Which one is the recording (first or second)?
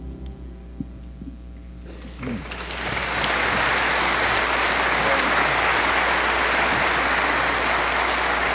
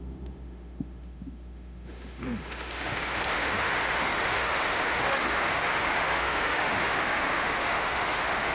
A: first